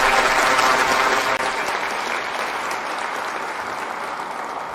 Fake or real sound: real